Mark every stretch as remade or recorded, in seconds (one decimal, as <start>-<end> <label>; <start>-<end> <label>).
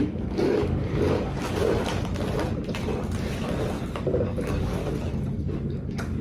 0.0-1.6 remade; 1.6-3.9 recorded; 3.9-4.8 remade; 4.8-5.4 recorded; 5.4-6.2 remade